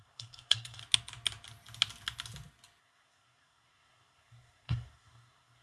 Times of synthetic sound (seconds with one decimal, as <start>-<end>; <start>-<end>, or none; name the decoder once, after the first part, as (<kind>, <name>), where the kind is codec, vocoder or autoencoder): 0.0-0.8 (codec, SNAC); 2.8-5.6